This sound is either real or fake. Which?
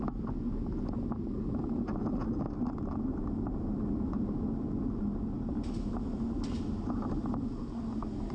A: real